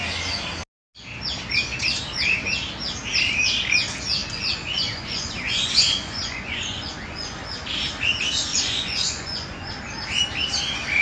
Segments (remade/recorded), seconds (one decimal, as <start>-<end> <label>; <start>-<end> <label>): 0.0-4.2 recorded; 4.2-7.4 remade; 7.4-8.5 recorded; 8.5-9.7 remade; 9.7-11.0 recorded